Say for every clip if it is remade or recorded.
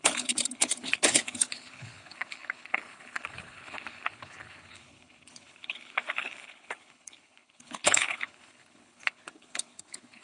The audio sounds remade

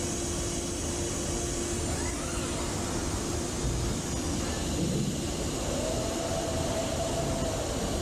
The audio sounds recorded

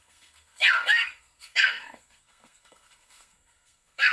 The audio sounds remade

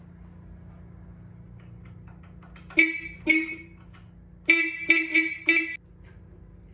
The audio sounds recorded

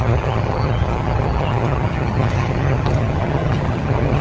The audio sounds remade